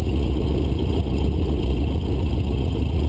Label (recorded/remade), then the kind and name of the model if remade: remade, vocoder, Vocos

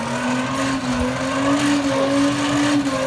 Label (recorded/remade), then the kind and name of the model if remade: recorded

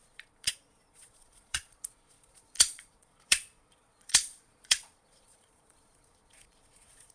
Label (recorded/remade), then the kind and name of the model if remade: remade, vocoder, Vocos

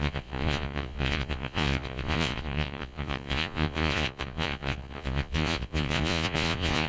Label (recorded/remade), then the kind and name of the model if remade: remade, vocoder, Vocos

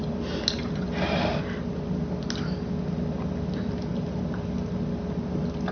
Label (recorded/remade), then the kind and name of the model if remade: recorded